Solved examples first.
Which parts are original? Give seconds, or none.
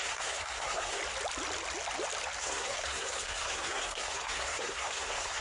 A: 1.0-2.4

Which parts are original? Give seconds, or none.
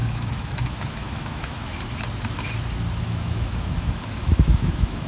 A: 1.7-3.0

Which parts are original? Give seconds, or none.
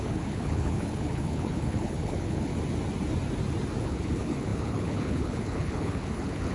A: 2.5-3.8